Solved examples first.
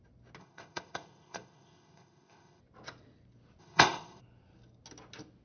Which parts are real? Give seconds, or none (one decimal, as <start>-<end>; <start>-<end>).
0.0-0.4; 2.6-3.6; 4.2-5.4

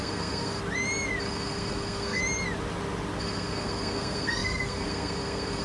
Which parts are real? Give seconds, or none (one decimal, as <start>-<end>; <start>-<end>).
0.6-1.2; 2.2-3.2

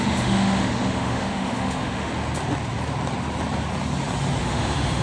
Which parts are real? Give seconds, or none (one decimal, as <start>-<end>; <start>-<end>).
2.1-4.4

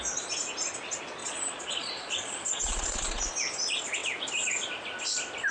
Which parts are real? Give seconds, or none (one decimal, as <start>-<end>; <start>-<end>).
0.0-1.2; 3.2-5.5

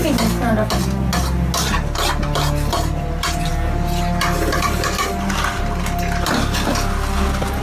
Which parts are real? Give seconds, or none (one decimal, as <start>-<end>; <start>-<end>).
0.0-7.6